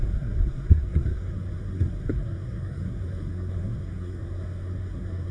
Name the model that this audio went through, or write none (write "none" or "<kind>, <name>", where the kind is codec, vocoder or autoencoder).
codec, SNAC